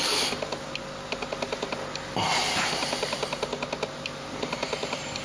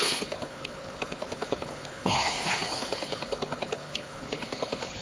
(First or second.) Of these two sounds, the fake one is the second